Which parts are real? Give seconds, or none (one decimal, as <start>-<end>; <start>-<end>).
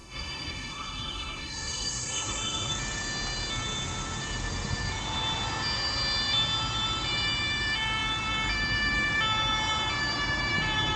2.7-11.0